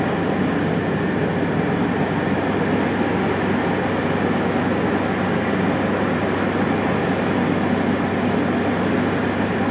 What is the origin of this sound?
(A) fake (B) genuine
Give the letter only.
B